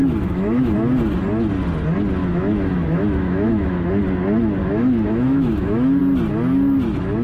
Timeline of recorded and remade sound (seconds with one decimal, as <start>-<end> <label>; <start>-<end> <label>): 0.0-0.7 remade; 0.7-2.2 recorded; 2.2-3.9 remade; 3.9-4.6 recorded; 4.6-6.0 remade; 6.0-7.2 recorded